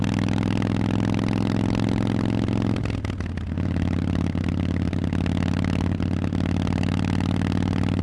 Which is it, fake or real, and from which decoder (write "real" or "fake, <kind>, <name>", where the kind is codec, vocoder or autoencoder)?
real